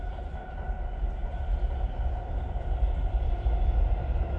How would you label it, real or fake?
real